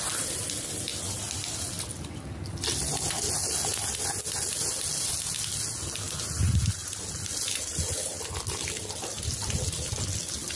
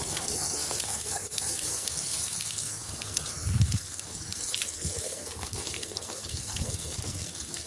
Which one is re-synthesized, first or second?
second